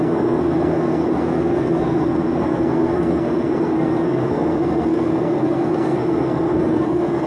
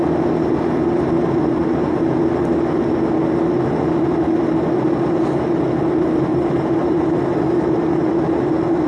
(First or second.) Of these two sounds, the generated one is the first